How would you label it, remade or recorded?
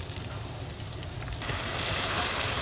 remade